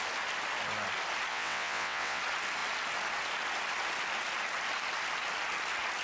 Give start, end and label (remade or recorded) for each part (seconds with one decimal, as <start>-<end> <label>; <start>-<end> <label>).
0.0-1.3 recorded; 1.3-2.2 remade; 2.2-6.0 recorded